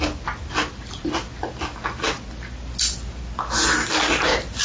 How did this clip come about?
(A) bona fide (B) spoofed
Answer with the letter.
A